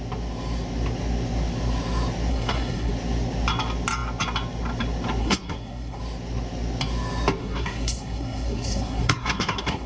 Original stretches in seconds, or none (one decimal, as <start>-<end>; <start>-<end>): 0.0-2.3; 2.9-5.2; 6.0-7.4